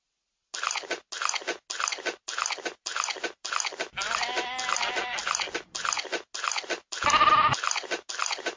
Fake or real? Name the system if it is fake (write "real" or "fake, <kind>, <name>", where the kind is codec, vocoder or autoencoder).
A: real